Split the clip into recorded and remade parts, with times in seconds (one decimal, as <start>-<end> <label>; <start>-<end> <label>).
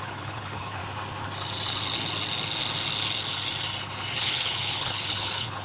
0.0-0.8 remade; 0.8-4.2 recorded; 4.2-5.6 remade